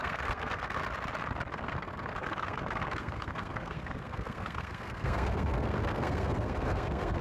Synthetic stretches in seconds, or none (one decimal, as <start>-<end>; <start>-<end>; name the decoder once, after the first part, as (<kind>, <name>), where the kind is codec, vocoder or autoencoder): 0.0-0.8 (codec, SNAC); 1.5-7.2